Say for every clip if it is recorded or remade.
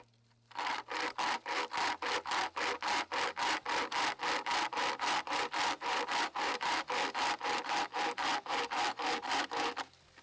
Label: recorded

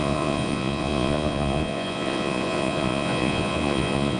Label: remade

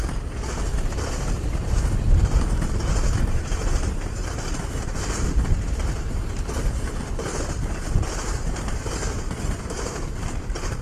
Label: remade